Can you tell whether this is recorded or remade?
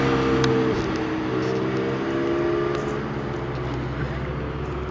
recorded